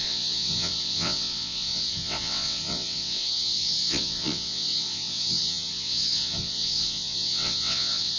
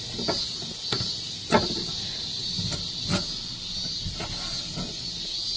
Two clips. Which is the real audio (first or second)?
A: second